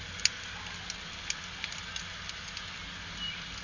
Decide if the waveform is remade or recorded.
recorded